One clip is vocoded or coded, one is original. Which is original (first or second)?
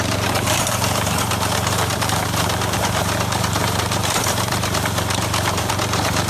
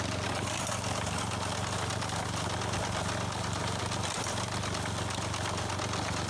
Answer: second